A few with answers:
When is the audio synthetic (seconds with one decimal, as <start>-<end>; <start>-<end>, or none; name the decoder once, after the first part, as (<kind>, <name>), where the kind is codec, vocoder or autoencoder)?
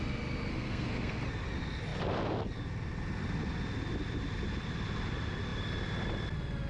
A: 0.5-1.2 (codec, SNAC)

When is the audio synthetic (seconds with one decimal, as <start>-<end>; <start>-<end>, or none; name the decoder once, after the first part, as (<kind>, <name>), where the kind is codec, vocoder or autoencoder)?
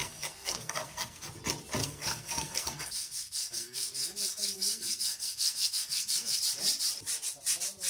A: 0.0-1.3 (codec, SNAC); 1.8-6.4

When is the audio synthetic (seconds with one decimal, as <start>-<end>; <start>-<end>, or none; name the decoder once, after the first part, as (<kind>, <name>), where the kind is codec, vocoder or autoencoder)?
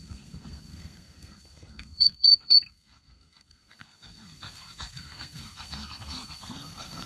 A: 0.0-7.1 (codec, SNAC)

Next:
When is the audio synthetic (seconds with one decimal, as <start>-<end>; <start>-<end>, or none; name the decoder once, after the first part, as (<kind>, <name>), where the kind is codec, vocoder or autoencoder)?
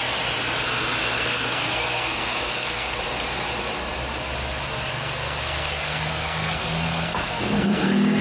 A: 1.0-3.0 (codec, SNAC); 4.9-8.2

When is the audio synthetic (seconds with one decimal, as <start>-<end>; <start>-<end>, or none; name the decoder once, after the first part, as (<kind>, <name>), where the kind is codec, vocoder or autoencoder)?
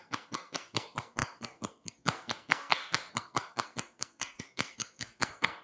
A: 0.0-5.6 (codec, SNAC)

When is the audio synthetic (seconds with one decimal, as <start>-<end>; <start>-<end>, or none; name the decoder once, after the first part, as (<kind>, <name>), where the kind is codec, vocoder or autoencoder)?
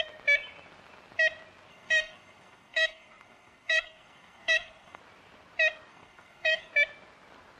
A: 1.7-5.0 (codec, SNAC); 5.9-6.7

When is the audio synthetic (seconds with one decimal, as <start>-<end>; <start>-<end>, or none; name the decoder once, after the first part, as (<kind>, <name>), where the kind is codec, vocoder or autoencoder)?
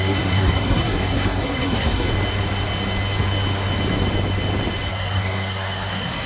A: 0.0-2.1 (codec, SNAC); 4.9-6.3